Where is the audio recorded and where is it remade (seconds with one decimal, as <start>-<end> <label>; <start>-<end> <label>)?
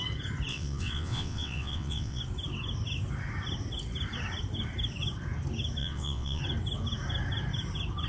0.0-0.5 recorded; 0.5-2.2 remade; 2.2-5.8 recorded; 5.8-6.4 remade; 6.4-8.1 recorded